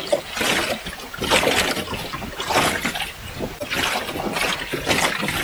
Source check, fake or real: real